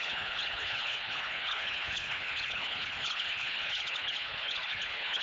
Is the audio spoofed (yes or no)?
yes